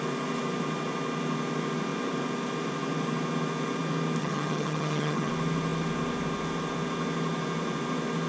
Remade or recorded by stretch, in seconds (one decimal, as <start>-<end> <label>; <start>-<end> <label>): 0.0-4.2 recorded; 4.2-5.3 remade; 5.3-8.3 recorded